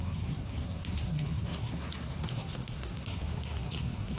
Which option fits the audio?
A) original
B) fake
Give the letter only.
B